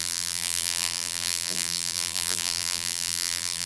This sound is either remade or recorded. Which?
remade